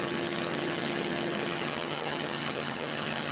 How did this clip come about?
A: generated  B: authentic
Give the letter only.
A